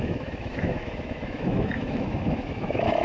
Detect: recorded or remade remade